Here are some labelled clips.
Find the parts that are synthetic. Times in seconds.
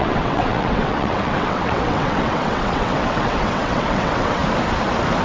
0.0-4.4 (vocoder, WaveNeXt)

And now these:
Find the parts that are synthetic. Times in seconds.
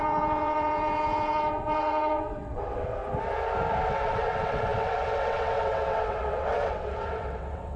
0.0-3.0 (vocoder, WaveNeXt); 3.9-7.8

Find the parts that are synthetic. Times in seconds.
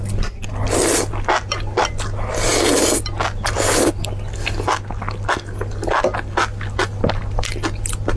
none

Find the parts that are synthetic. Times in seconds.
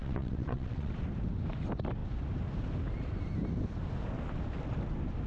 0.0-0.9 (vocoder, WaveNeXt)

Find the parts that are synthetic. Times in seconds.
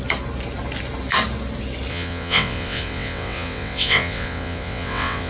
1.9-5.3 (vocoder, WaveNeXt)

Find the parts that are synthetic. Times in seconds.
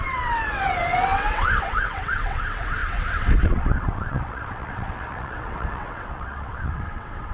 0.0-7.3 (vocoder, WaveNeXt)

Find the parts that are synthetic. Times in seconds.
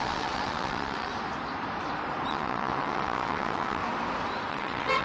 0.0-1.1 (vocoder, WaveNeXt); 2.3-3.8; 4.5-5.0